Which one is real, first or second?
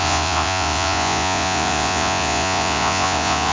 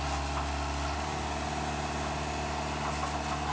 second